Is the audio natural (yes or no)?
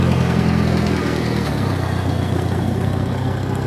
no